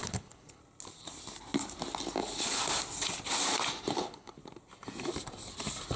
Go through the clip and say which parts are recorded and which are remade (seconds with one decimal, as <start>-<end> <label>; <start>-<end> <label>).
0.0-0.6 remade; 0.6-2.2 recorded; 2.2-2.6 remade; 2.6-3.9 recorded; 3.9-4.4 remade; 4.4-6.0 recorded